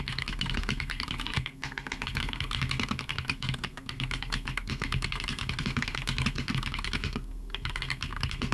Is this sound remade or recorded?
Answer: remade